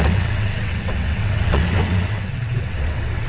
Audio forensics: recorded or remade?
remade